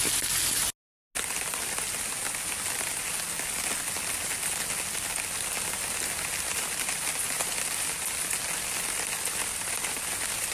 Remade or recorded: recorded